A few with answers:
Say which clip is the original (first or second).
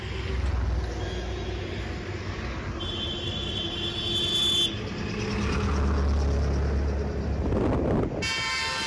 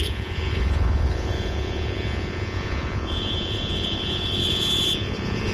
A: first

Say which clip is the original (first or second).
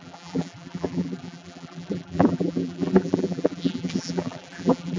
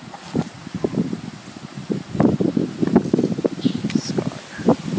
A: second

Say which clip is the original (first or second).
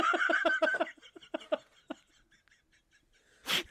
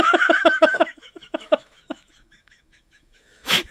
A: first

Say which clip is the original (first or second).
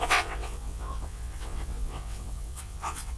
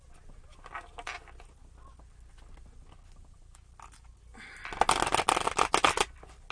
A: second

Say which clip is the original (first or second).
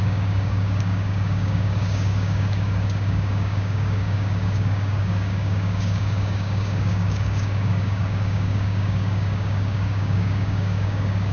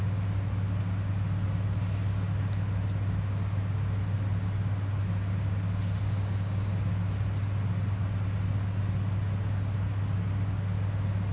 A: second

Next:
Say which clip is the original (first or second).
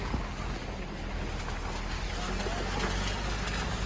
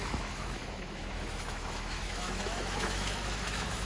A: first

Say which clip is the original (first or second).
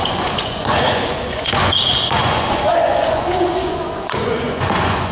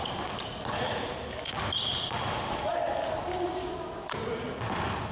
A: second